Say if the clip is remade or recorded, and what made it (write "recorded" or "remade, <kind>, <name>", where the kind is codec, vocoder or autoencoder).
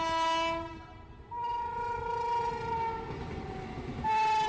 recorded